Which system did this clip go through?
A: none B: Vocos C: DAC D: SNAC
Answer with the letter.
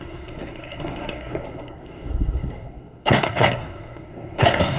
D